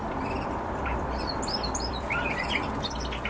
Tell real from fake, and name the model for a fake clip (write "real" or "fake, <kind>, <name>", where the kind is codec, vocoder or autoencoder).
fake, vocoder, BigVGAN v2